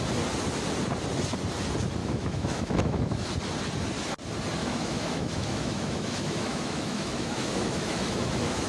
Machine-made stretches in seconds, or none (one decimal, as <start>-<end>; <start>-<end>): 2.0-3.3; 4.6-8.7